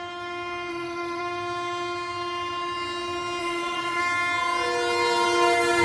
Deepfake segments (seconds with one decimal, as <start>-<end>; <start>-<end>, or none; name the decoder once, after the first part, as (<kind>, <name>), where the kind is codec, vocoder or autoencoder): 0.7-1.2 (vocoder, Vocos); 3.4-4.0